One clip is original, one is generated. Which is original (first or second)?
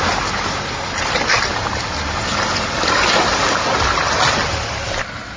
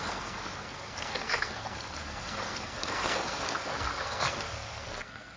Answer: first